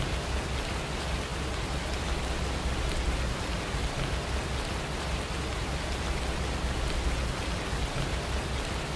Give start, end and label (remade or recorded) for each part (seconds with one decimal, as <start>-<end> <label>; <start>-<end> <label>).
0.0-9.0 recorded